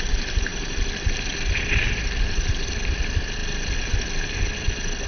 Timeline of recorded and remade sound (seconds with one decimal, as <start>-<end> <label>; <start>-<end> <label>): 0.0-5.1 recorded